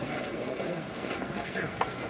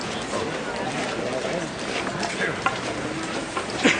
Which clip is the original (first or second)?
second